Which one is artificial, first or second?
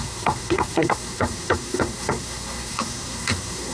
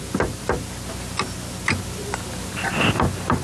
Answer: first